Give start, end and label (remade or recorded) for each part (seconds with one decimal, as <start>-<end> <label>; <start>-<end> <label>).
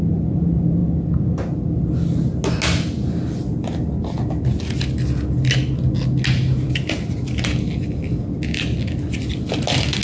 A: 0.0-10.0 recorded